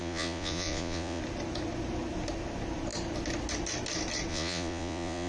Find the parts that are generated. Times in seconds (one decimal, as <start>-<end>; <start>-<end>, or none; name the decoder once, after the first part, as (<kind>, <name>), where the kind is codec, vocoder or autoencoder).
0.0-1.2 (vocoder, Vocos); 4.3-5.3